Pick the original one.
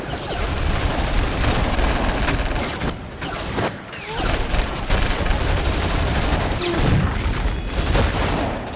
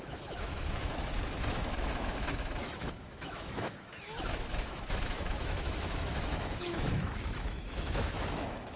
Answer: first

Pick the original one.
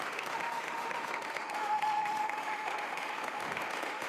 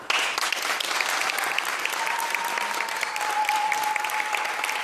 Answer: second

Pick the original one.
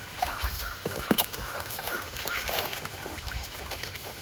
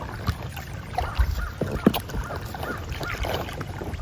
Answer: second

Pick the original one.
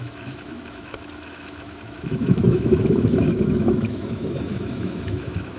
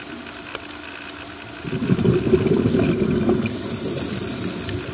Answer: second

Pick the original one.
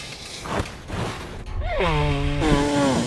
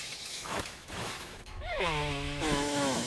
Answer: first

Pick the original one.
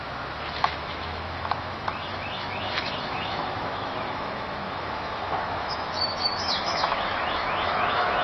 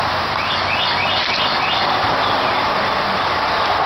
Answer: second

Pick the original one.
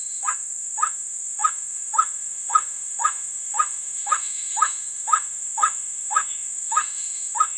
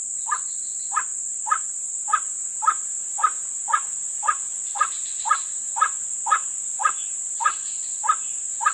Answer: second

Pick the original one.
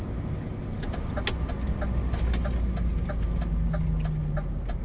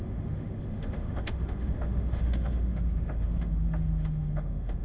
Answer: first